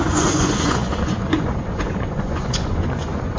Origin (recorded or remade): remade